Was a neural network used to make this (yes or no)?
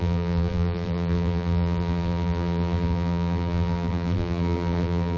yes